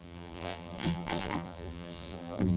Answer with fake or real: fake